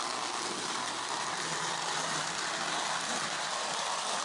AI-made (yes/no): no